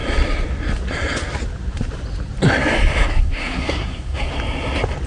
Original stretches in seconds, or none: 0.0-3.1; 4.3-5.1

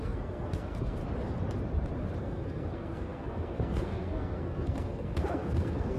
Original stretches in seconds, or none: 1.0-2.2

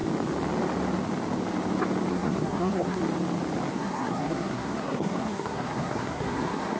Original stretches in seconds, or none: 0.0-2.1; 3.0-3.7

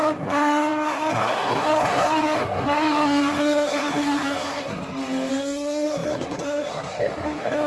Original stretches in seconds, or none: 4.8-5.3

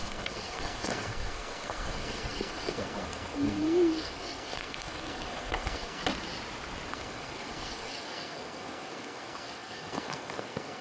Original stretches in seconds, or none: 6.0-6.9

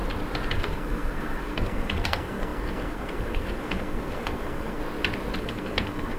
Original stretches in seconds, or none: 0.0-0.5; 4.8-5.4